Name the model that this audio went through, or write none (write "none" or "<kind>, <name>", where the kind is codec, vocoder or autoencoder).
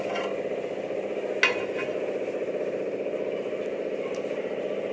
none